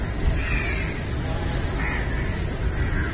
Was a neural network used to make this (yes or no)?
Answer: no